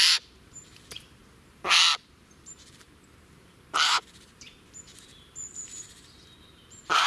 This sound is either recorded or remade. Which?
remade